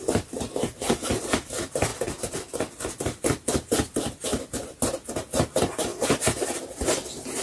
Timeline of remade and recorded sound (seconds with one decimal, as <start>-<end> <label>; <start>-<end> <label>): 0.0-7.4 recorded